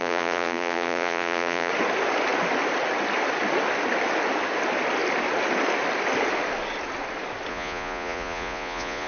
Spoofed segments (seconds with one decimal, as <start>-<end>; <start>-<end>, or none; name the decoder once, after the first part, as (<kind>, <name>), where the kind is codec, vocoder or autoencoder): 0.0-1.7 (vocoder, Vocos); 7.5-9.1